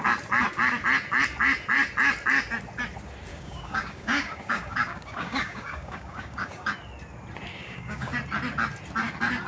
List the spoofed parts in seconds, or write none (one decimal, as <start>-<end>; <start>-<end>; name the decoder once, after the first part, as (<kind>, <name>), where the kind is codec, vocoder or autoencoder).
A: 3.3-6.7 (codec, DAC); 7.5-8.1